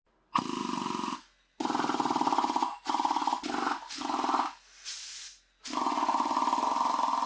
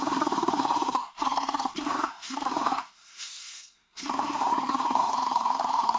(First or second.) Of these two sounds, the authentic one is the first